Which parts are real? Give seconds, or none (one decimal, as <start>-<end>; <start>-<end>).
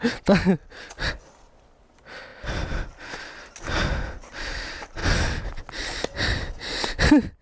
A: 0.0-7.4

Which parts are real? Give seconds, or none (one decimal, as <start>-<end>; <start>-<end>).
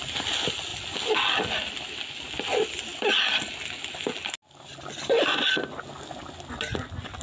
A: 0.0-7.2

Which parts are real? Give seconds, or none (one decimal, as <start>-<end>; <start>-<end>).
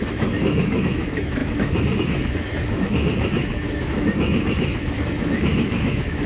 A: none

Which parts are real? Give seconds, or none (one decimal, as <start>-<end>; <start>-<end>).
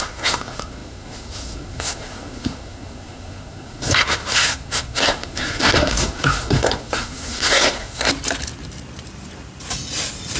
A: 8.1-10.4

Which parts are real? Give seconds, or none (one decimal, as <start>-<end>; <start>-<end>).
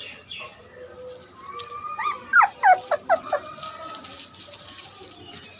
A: 0.0-5.6